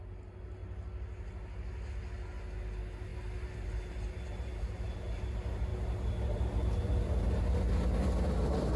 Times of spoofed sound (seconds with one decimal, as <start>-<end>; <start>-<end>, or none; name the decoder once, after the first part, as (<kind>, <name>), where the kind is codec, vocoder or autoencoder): none